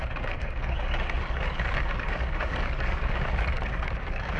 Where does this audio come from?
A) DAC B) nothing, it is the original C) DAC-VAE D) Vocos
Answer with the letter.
A